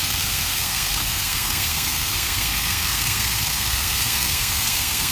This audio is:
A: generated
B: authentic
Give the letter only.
A